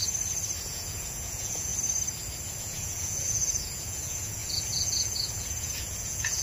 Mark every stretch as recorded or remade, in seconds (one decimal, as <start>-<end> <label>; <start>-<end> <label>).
0.0-0.6 recorded; 0.6-1.7 remade; 1.7-2.6 recorded; 2.6-6.4 remade